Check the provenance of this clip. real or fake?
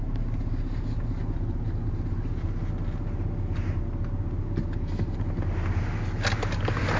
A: real